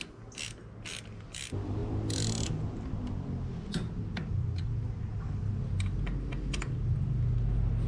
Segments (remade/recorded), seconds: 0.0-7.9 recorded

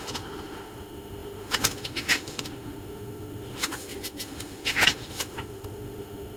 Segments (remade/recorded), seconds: 0.0-6.4 remade